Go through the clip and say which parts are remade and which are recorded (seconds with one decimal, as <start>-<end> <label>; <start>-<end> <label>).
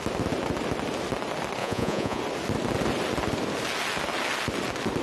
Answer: 0.0-1.6 recorded; 1.6-2.2 remade; 2.2-5.0 recorded